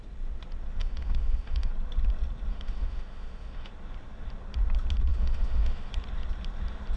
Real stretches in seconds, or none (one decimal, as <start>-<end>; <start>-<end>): 0.0-0.8; 1.7-2.5; 3.7-5.1; 5.9-7.0